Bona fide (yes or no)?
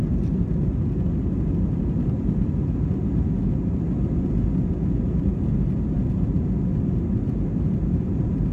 yes